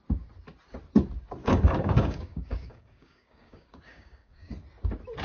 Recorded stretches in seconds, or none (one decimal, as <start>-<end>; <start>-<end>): 0.0-1.4; 4.5-5.2